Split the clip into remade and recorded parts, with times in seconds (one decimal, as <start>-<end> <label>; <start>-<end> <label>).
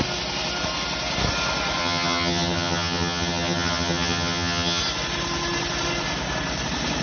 0.0-1.8 recorded; 1.8-4.8 remade; 4.8-7.0 recorded